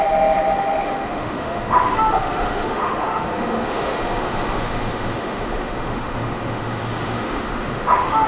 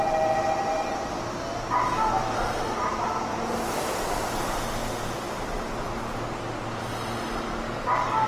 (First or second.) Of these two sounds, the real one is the second